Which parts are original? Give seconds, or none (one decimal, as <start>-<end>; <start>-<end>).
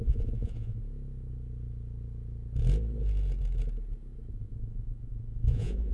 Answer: 0.8-4.3